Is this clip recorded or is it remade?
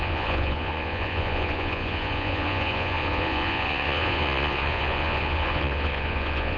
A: remade